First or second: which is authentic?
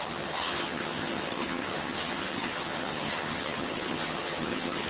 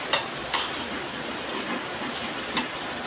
second